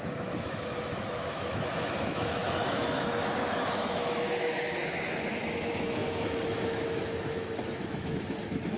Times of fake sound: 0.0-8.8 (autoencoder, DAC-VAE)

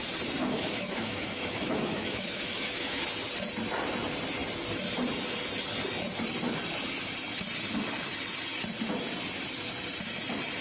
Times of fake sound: 0.4-3.0 (autoencoder, DAC-VAE)